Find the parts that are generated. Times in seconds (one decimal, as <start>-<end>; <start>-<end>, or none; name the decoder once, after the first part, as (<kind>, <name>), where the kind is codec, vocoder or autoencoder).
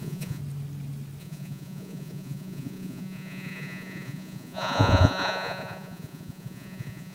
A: 0.0-0.4 (vocoder, Vocos); 1.2-7.1